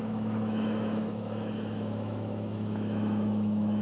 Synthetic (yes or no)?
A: yes